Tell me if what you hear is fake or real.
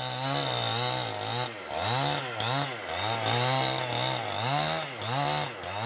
real